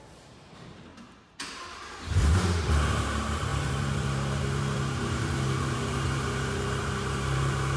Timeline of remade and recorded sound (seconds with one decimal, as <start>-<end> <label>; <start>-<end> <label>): 0.0-0.9 remade; 0.9-1.9 recorded; 1.9-7.8 remade